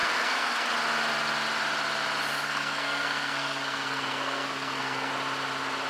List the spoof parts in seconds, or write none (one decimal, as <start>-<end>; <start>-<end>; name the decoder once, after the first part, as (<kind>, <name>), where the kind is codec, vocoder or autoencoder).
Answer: 0.0-0.7 (codec, SNAC); 2.3-5.1